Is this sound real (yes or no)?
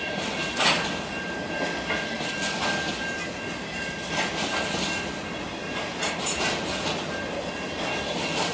yes